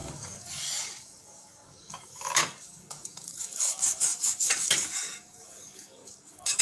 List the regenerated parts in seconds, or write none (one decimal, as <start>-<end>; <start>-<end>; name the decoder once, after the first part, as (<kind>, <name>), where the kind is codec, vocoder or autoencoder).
0.0-6.6 (codec, DAC)